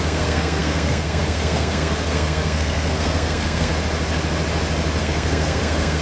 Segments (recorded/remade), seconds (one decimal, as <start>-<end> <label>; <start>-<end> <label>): 0.0-3.7 remade; 3.7-5.0 recorded; 5.0-6.0 remade